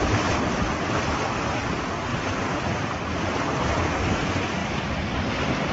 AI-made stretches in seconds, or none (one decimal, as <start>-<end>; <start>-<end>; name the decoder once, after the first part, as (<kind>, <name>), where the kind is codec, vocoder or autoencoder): none